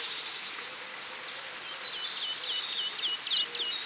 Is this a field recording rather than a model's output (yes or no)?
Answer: yes